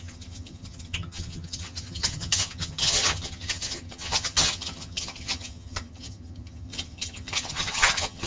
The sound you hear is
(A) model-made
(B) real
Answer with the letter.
A